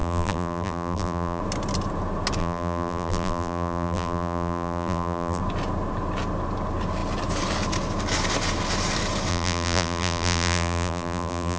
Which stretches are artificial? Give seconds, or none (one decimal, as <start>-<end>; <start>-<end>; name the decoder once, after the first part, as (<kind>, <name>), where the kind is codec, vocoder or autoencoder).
0.0-1.4 (vocoder, BigVGAN v2); 2.4-5.4; 9.3-11.6